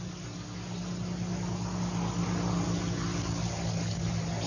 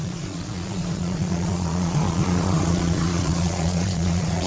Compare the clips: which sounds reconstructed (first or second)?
second